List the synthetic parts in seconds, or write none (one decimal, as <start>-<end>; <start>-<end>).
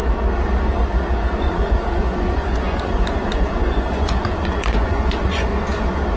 1.4-5.5